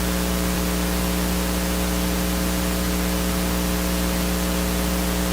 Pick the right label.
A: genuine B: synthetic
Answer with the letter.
A